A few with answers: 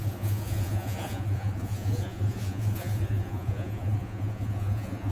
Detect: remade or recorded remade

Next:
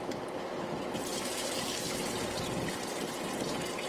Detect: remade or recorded recorded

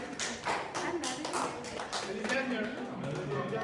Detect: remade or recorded recorded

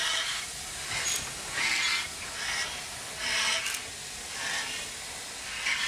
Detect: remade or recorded recorded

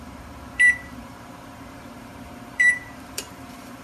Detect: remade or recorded remade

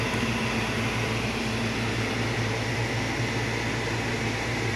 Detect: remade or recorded recorded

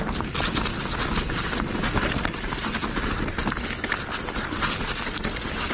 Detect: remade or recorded recorded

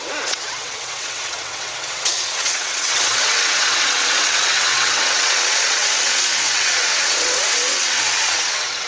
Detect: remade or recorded remade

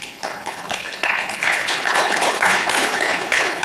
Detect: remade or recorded remade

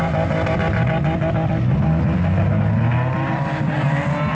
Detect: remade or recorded recorded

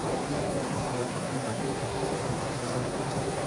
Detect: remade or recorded remade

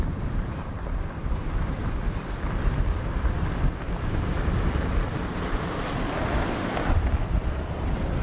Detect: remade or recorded remade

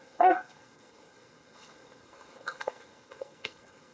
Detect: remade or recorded remade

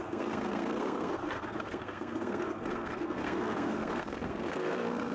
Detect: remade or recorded remade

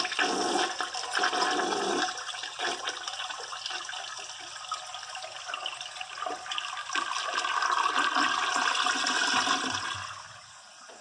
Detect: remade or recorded recorded